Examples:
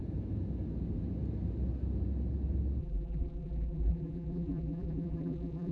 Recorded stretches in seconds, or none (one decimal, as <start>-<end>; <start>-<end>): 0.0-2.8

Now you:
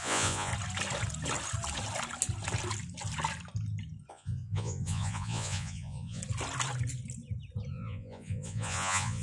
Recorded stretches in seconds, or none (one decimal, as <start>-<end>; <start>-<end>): 0.5-4.1; 6.2-7.7

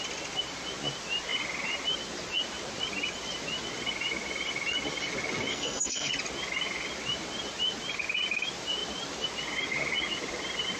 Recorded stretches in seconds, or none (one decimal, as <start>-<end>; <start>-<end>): 0.0-5.5; 6.1-10.8

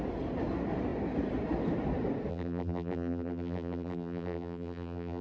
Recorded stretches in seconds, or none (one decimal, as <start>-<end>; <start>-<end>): 0.0-2.3

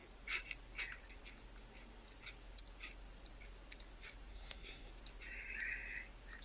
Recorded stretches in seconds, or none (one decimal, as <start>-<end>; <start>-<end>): 0.0-4.3; 4.9-6.4